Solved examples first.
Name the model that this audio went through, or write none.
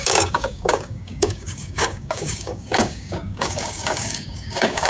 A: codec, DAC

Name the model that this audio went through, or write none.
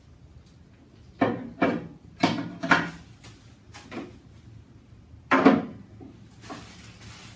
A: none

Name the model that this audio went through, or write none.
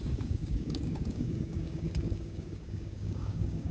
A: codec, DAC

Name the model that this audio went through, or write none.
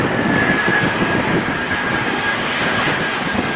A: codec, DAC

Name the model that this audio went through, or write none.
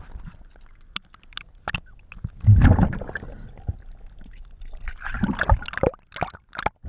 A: none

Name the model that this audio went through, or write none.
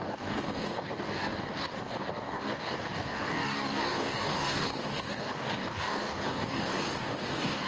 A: codec, DAC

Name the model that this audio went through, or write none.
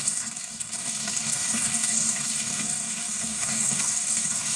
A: codec, DAC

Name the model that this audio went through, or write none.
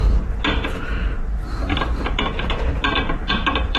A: none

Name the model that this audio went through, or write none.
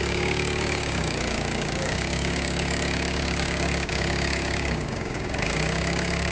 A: codec, DAC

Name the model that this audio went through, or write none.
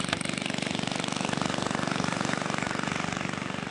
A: codec, DAC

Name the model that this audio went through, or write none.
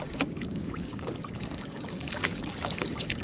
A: codec, DAC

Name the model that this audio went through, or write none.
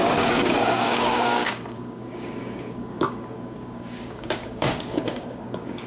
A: codec, DAC